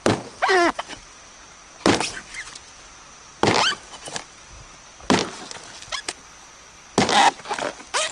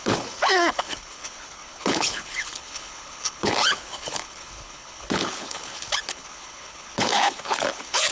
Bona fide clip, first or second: first